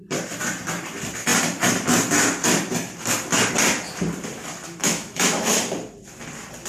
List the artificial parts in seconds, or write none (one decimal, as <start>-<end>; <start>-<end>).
4.8-5.5